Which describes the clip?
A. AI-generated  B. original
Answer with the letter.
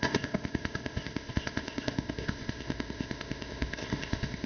A